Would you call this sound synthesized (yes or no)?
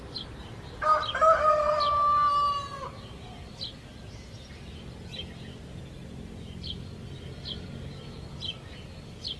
no